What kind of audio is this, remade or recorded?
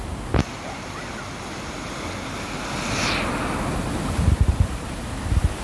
recorded